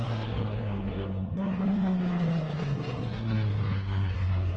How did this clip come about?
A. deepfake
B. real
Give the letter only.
A